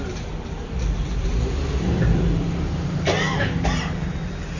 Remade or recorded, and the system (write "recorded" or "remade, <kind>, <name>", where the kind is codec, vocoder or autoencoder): recorded